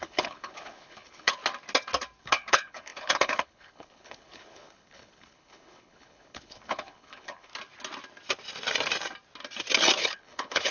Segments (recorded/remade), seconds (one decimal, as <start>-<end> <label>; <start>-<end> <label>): 0.0-1.4 remade; 1.4-2.2 recorded; 2.2-7.5 remade; 7.5-10.0 recorded; 10.0-10.7 remade